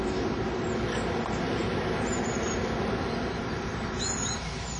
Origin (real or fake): real